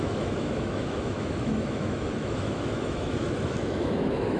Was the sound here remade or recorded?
remade